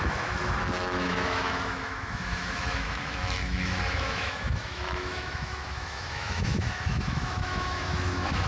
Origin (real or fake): fake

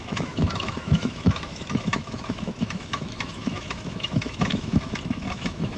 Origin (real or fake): fake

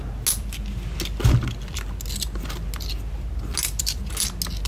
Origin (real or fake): real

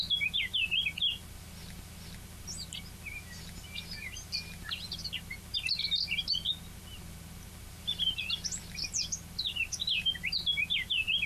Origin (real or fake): real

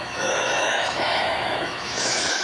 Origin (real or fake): fake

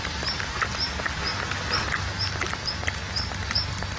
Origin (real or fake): real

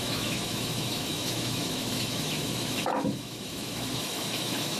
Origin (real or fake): fake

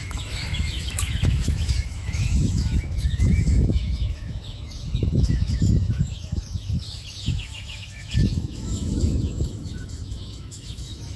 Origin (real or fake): fake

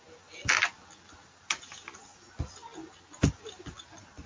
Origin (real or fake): real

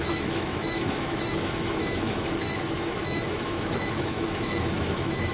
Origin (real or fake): fake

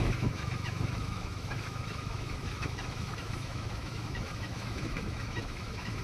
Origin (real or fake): fake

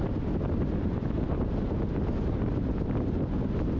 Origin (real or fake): real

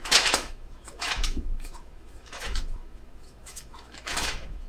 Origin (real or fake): fake